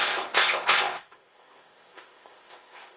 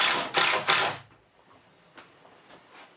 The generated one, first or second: first